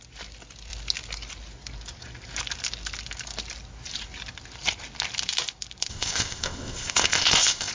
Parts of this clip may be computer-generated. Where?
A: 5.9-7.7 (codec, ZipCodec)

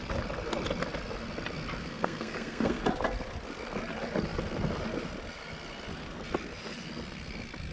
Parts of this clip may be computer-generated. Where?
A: 1.8-2.8 (codec, SNAC)

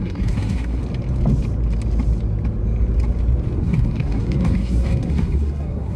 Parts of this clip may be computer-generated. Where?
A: 0.0-0.8 (codec, SNAC); 3.6-6.0